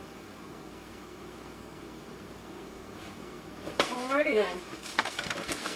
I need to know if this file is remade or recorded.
remade